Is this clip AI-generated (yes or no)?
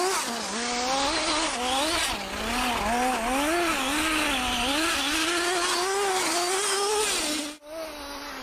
no